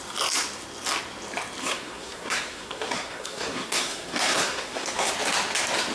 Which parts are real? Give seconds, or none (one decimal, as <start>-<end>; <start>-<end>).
0.0-1.6; 5.1-5.9